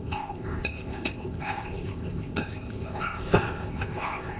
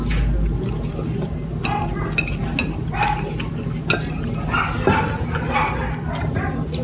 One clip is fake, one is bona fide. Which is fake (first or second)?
first